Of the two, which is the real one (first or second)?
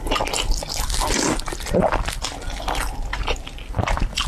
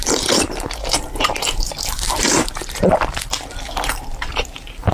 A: first